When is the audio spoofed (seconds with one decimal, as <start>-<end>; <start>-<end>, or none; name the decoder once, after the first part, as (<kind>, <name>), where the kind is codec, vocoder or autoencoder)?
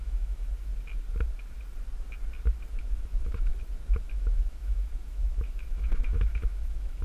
0.0-0.7 (autoencoder, DAC-VAE); 2.7-3.5; 4.0-7.0